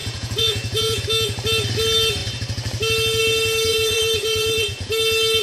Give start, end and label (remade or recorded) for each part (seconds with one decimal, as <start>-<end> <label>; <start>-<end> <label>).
0.0-1.0 remade; 1.0-3.7 recorded; 3.7-4.9 remade; 4.9-5.4 recorded